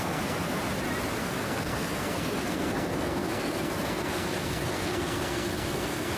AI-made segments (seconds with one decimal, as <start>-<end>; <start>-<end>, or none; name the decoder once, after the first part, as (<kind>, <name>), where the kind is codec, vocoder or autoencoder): 0.0-0.6 (codec, SNAC); 1.2-6.2